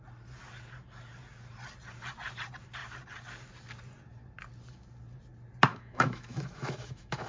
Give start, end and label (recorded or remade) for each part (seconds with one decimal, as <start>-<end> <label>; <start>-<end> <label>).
0.0-5.7 recorded; 5.7-7.3 remade